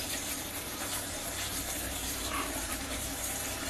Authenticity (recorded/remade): remade